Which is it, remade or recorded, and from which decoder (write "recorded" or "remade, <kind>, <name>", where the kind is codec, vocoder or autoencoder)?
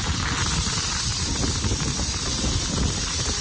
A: recorded